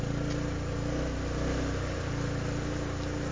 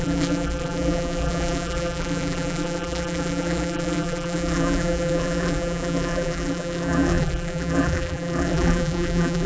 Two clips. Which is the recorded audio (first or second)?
first